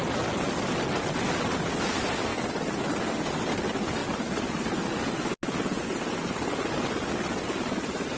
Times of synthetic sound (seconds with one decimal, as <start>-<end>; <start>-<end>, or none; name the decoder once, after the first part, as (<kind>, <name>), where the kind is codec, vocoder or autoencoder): none